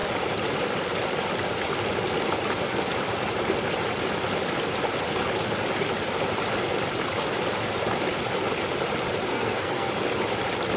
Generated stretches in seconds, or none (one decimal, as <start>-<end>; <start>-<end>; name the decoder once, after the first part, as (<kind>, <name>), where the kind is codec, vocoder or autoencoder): 9.3-9.9 (codec, SNAC)